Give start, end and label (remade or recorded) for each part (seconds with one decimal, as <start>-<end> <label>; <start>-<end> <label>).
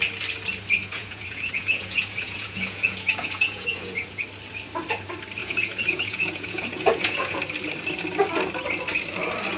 0.0-0.8 recorded; 0.8-4.2 remade; 4.2-5.4 recorded; 5.4-7.4 remade; 7.4-9.6 recorded